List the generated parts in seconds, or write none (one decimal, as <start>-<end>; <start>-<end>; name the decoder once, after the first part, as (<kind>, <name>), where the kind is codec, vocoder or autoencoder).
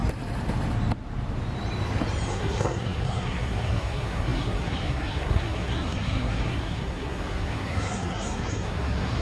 2.3-9.2 (codec, SNAC)